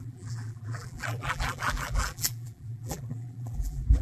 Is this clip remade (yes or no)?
yes